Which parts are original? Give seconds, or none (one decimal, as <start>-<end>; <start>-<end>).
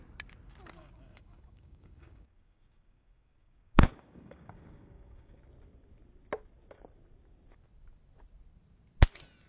0.0-0.8; 5.4-9.5